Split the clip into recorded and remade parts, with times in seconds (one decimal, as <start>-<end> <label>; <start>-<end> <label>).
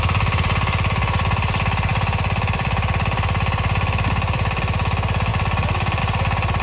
0.0-1.9 recorded; 1.9-4.6 remade; 4.6-5.3 recorded; 5.3-6.0 remade; 6.0-6.6 recorded